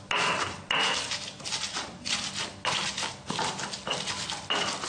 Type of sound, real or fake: real